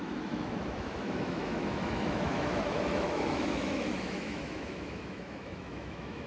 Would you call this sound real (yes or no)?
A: no